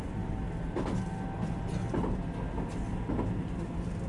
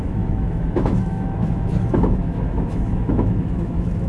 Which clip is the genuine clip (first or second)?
first